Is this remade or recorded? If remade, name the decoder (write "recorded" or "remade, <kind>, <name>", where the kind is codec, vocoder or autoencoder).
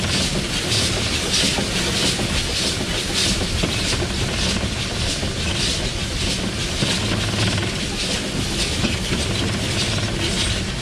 recorded